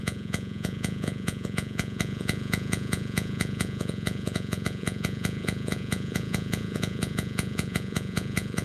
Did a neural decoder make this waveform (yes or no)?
yes